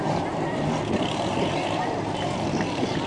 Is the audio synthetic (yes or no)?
yes